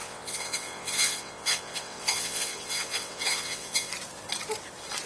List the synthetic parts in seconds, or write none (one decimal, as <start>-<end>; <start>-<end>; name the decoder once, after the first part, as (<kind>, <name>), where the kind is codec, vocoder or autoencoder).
0.0-3.9 (vocoder, WaveNeXt)